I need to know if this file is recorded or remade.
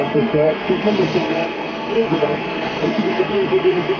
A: remade